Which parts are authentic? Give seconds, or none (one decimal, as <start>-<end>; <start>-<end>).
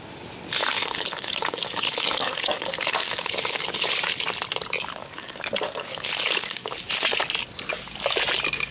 0.0-0.6; 3.9-5.0; 6.8-8.7